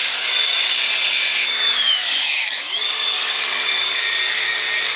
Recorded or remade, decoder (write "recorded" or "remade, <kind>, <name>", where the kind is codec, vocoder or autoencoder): remade, codec, DAC